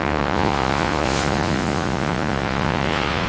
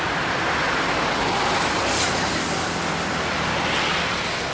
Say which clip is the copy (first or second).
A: first